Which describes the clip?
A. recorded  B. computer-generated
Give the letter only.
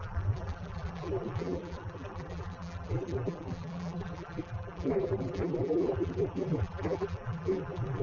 B